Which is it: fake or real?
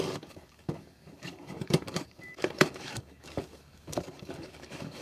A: fake